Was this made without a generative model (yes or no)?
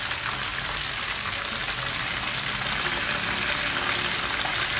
yes